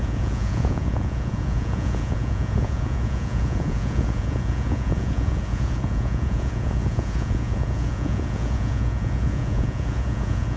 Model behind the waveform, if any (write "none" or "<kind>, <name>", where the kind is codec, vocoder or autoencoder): vocoder, Vocos